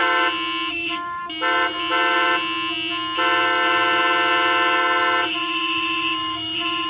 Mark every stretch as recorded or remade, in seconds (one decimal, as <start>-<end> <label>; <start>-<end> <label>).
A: 0.0-0.7 recorded; 0.7-1.2 remade; 1.2-5.3 recorded; 5.3-6.9 remade